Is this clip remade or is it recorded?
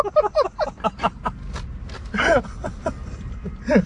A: recorded